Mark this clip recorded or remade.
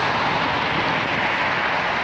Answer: recorded